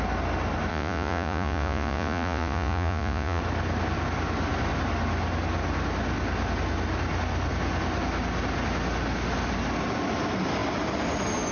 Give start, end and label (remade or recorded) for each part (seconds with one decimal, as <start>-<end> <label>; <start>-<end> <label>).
0.0-0.7 recorded; 0.7-3.4 remade; 3.4-11.5 recorded